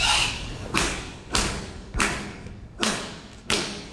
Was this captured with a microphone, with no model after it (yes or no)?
no